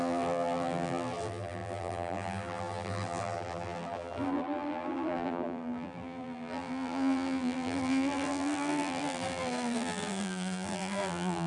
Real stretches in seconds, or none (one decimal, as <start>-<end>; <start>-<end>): none